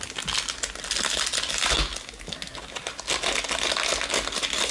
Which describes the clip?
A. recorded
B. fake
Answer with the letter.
A